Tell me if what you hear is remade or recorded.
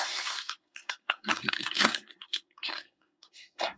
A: remade